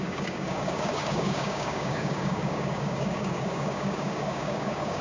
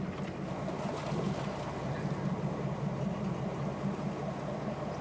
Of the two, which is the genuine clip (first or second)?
second